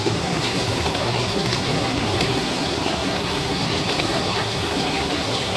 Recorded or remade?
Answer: remade